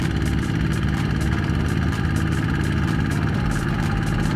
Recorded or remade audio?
recorded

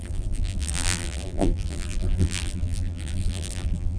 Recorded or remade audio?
remade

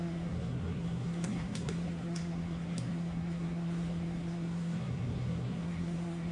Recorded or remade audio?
remade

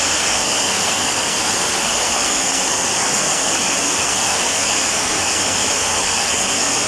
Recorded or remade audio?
remade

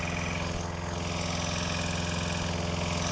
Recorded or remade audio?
recorded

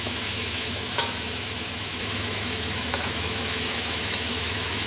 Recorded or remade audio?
remade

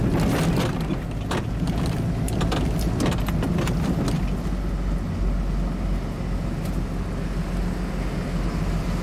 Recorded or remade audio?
recorded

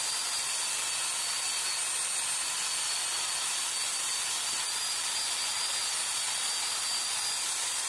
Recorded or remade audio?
recorded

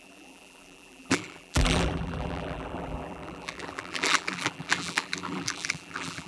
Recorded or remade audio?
remade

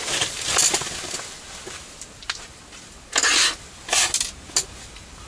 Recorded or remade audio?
recorded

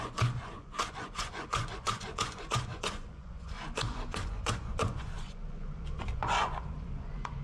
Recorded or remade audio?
remade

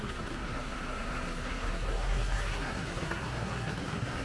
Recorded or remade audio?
remade